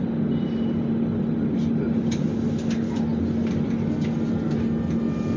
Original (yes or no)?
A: yes